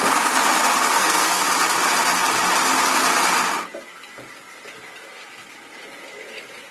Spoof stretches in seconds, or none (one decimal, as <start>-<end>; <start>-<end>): 0.9-1.4